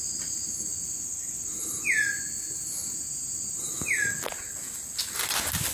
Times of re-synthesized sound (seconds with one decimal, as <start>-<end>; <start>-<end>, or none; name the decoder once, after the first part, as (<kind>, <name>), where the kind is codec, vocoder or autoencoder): none